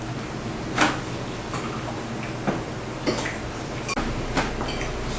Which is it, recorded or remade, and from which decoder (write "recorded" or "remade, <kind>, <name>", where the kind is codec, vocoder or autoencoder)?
recorded